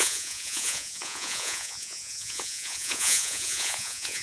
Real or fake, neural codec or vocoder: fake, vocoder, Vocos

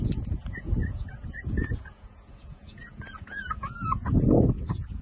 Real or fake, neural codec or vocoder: fake, vocoder, Vocos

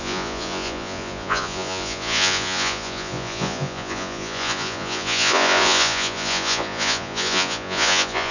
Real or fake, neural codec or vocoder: fake, vocoder, Vocos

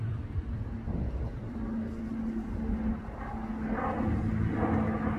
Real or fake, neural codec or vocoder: real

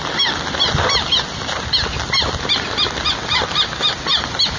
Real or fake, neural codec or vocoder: real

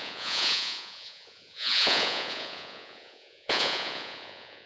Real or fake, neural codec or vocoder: fake, vocoder, Vocos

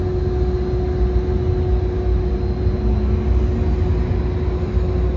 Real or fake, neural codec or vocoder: real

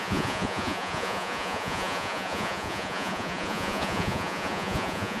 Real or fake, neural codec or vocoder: fake, vocoder, Vocos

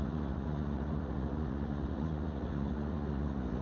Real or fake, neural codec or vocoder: fake, vocoder, Vocos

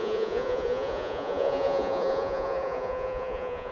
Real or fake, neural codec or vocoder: fake, vocoder, Vocos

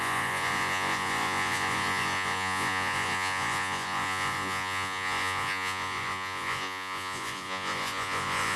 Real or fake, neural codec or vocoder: fake, vocoder, Vocos